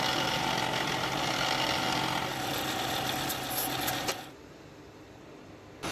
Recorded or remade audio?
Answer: recorded